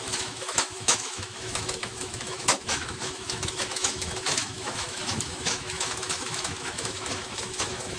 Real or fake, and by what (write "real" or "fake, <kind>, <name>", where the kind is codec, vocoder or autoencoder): fake, autoencoder, DAC-VAE